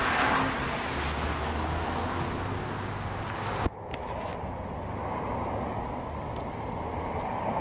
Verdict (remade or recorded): recorded